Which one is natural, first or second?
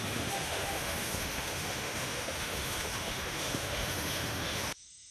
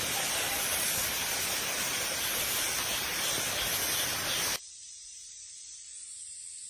second